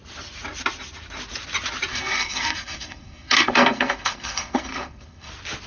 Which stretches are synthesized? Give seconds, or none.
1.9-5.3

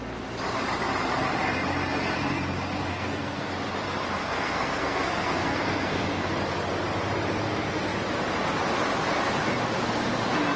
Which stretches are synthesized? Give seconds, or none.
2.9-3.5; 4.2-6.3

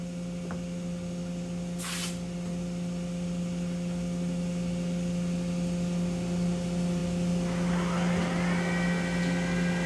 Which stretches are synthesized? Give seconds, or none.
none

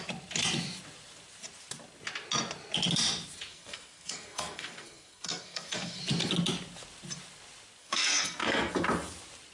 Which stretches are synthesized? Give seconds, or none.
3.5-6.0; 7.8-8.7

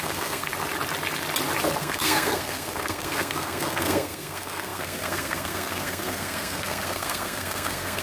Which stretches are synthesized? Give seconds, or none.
0.0-0.5; 1.8-8.0

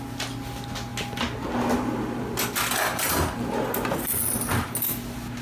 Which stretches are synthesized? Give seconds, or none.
none

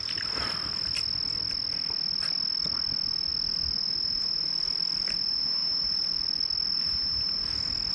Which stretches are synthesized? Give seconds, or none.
none